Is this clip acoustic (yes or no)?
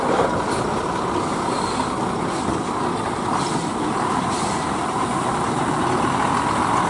yes